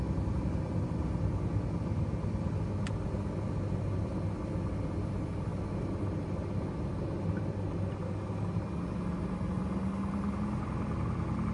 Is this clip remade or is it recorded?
recorded